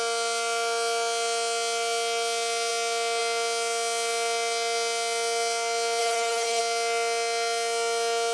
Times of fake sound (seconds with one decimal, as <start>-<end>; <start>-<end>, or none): 6.0-6.6